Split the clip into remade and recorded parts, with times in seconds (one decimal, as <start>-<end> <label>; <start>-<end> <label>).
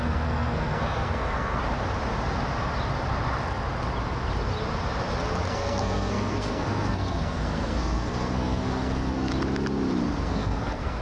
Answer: 0.0-1.6 remade; 1.6-5.5 recorded; 5.5-9.3 remade; 9.3-10.2 recorded; 10.2-11.0 remade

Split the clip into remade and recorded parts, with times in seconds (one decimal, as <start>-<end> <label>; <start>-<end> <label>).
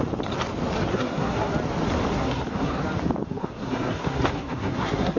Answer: 0.0-0.9 recorded; 0.9-1.5 remade; 1.5-2.1 recorded; 2.1-2.8 remade; 2.8-3.2 recorded; 3.2-5.2 remade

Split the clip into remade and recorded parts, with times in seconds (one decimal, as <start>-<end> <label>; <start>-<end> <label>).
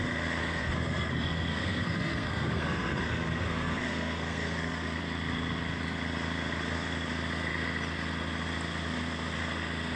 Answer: 0.0-0.4 recorded; 0.4-5.0 remade; 5.0-10.0 recorded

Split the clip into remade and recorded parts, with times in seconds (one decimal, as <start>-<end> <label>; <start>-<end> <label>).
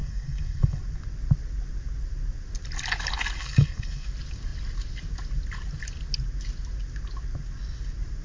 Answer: 0.0-0.8 remade; 0.8-3.4 recorded; 3.4-4.1 remade; 4.1-8.2 recorded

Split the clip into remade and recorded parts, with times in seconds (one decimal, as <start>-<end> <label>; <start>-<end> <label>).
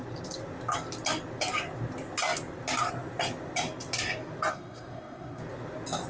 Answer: 0.0-4.5 recorded; 4.5-5.4 remade; 5.4-6.1 recorded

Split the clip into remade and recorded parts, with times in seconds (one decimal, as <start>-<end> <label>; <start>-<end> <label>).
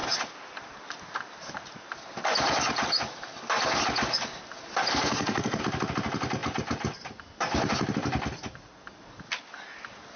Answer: 0.0-4.9 recorded; 4.9-5.6 remade; 5.6-10.2 recorded